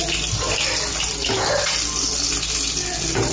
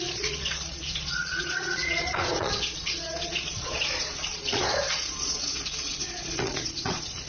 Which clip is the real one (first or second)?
first